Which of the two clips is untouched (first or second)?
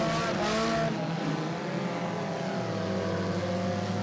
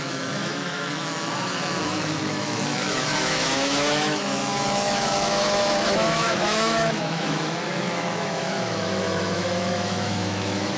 first